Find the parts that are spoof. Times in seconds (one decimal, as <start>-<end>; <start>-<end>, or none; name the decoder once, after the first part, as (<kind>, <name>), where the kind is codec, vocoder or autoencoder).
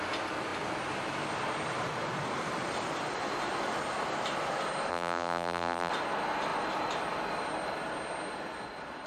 4.9-5.9 (vocoder, BigVGAN v2)